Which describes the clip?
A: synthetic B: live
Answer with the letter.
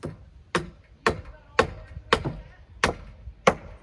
B